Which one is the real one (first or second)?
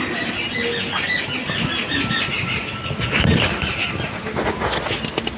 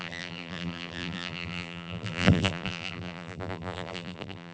first